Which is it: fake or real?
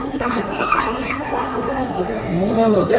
fake